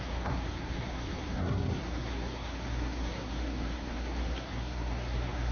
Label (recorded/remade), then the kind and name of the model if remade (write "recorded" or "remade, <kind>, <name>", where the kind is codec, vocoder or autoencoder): remade, codec, SNAC